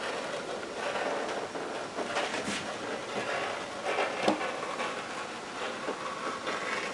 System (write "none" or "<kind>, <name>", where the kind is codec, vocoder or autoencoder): none